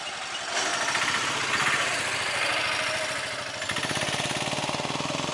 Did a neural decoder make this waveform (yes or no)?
no